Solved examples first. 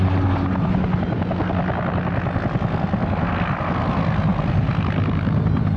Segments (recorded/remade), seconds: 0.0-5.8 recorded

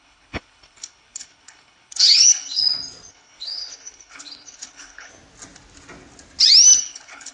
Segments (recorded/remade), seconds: 0.0-2.6 remade; 2.6-3.1 recorded; 3.1-5.1 remade; 5.1-6.8 recorded; 6.8-7.3 remade

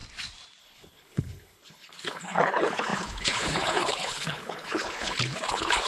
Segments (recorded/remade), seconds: 0.0-0.6 recorded; 0.6-5.9 remade

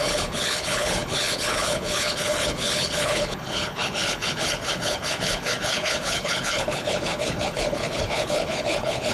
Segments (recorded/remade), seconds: 0.0-9.1 remade

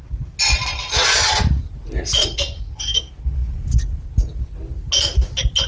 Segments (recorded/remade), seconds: 0.0-5.7 recorded

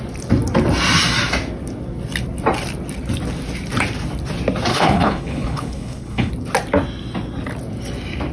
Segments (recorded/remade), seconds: 0.0-4.7 recorded; 4.7-6.3 remade; 6.3-8.3 recorded

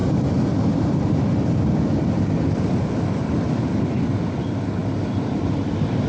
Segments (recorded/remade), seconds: 0.0-6.1 recorded

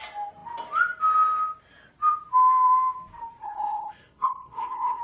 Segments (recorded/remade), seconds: 0.0-3.4 recorded; 3.4-5.0 remade